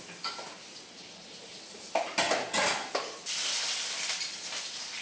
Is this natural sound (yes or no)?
yes